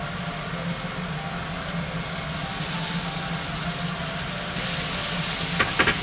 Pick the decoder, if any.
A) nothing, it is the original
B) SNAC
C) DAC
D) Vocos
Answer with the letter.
A